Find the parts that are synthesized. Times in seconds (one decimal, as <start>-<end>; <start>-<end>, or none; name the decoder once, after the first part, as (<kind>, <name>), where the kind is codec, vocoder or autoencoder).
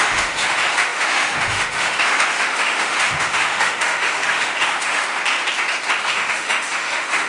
0.0-5.2 (autoencoder, DAC-VAE); 6.0-7.3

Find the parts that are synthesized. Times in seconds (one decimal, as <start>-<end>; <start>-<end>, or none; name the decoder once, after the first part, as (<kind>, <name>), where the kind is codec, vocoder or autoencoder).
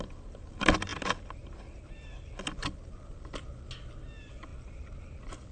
none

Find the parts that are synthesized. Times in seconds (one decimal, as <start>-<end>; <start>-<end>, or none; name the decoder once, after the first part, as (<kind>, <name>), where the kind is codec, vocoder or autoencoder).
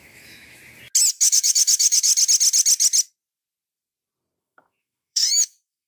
0.0-0.6 (autoencoder, DAC-VAE); 1.2-2.1; 4.4-5.9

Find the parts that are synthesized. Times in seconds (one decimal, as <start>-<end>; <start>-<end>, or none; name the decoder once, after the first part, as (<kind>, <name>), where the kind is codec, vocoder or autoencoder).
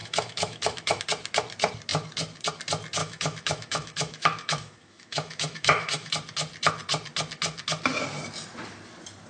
0.0-1.0 (autoencoder, DAC-VAE); 3.0-6.1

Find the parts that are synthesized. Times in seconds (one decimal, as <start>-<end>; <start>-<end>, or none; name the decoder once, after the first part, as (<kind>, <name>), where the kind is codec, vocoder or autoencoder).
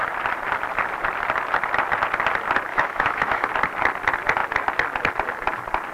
2.7-3.5 (autoencoder, DAC-VAE)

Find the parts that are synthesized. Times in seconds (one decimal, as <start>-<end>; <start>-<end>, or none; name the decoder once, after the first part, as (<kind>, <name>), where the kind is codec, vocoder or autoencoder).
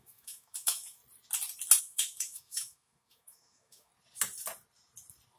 0.0-1.0 (autoencoder, DAC-VAE); 1.8-3.9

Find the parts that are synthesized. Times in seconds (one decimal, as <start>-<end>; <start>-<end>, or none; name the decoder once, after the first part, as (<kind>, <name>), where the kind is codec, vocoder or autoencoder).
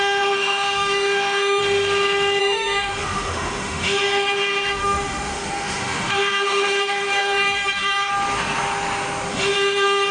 0.0-1.6 (autoencoder, DAC-VAE); 2.4-8.1; 9.3-10.1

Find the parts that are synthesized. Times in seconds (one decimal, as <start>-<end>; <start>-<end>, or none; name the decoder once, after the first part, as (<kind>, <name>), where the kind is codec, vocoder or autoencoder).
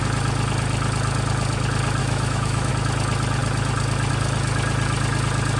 2.0-2.7 (autoencoder, DAC-VAE)